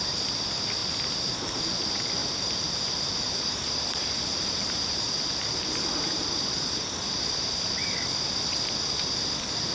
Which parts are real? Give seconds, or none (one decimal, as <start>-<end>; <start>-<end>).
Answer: 0.0-2.2; 6.2-9.7